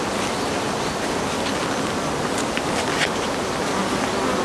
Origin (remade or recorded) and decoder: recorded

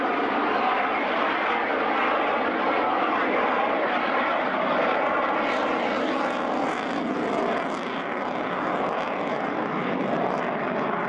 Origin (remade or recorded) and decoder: recorded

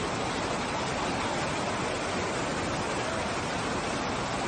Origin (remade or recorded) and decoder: recorded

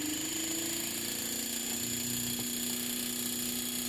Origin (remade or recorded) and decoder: recorded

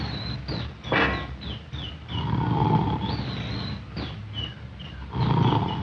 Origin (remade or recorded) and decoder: recorded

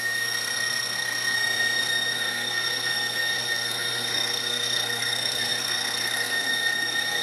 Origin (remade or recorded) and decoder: remade, codec, SNAC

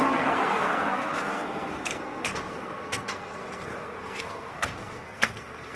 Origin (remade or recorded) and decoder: remade, codec, SNAC